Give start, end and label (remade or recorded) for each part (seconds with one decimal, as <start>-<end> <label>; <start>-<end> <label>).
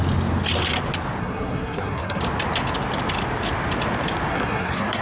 0.0-1.2 recorded; 1.2-2.2 remade; 2.2-4.3 recorded; 4.3-5.0 remade